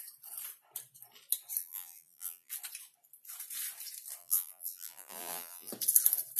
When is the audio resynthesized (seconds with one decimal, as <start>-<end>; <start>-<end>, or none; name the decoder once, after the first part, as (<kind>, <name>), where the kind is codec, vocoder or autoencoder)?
1.6-2.5 (vocoder, BigVGAN v2); 4.2-5.7